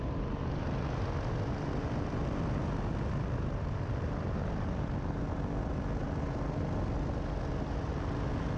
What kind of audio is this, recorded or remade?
recorded